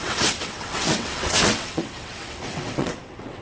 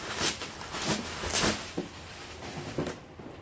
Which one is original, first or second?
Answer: second